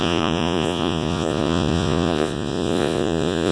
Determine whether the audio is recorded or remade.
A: remade